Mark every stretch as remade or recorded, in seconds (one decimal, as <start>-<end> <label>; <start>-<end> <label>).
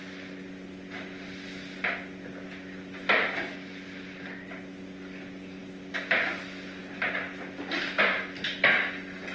0.0-9.3 recorded